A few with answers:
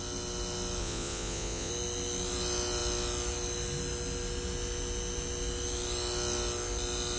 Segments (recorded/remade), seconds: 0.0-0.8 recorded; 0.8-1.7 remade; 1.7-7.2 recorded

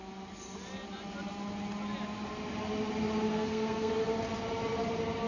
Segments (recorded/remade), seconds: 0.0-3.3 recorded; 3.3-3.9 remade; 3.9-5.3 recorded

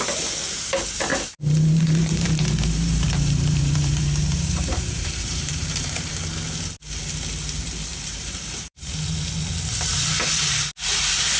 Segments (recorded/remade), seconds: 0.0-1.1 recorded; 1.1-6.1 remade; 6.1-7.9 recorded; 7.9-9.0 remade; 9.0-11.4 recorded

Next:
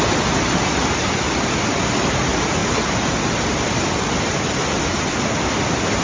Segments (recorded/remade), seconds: 0.0-6.0 recorded

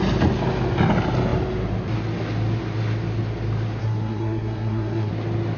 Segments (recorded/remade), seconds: 0.0-3.8 recorded; 3.8-5.1 remade; 5.1-5.6 recorded

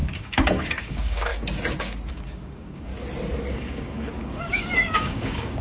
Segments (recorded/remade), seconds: 0.0-1.3 remade; 1.3-2.1 recorded; 2.1-2.9 remade; 2.9-3.5 recorded; 3.5-5.6 remade